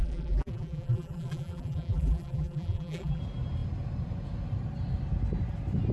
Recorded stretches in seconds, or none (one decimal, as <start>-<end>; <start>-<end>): 3.2-5.9